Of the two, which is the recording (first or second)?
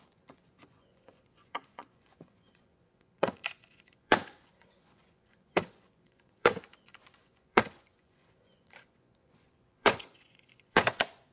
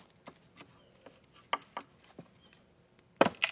second